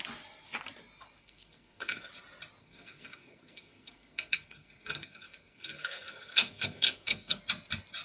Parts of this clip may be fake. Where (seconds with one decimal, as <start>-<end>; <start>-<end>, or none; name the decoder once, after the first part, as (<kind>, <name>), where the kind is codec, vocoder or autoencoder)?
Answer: 1.2-2.1 (codec, SNAC); 2.6-7.4